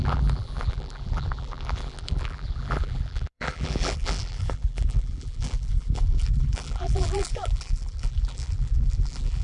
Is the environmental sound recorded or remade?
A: remade